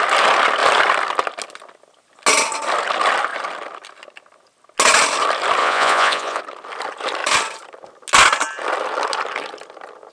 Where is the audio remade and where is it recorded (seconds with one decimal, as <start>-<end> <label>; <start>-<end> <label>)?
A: 0.0-5.6 recorded; 5.6-6.4 remade; 6.4-10.1 recorded